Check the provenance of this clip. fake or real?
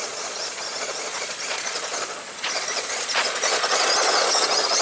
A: fake